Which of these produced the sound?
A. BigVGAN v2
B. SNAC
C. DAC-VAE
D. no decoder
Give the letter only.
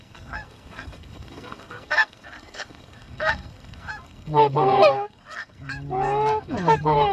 B